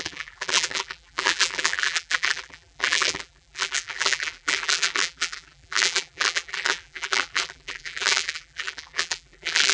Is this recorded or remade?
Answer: remade